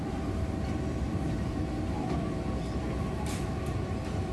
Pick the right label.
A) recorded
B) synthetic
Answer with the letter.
A